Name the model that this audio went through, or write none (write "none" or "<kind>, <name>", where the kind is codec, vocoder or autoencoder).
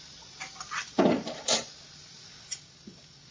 none